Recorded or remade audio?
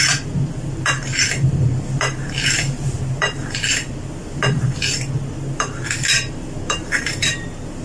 remade